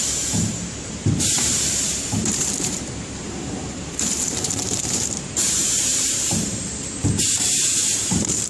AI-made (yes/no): yes